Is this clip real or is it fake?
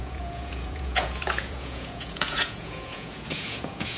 fake